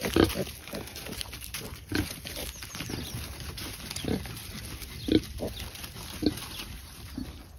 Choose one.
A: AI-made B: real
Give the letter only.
B